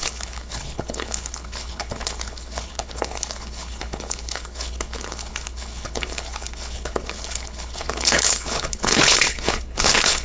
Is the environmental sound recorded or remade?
remade